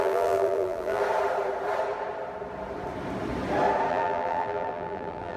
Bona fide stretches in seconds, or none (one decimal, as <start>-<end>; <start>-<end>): 1.0-3.9